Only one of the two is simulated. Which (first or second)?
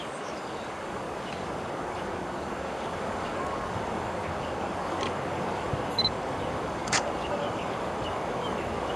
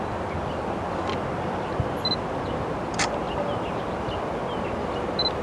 first